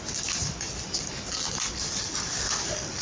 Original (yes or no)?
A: yes